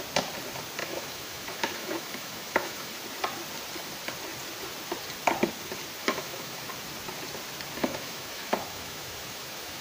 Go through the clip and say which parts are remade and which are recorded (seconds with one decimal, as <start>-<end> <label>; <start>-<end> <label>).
0.0-0.8 recorded; 0.8-2.9 remade; 2.9-6.0 recorded; 6.0-6.7 remade; 6.7-7.8 recorded; 7.8-9.8 remade